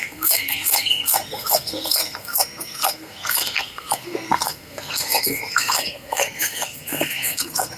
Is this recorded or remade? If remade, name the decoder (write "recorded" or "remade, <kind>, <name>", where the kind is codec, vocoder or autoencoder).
remade, codec, SNAC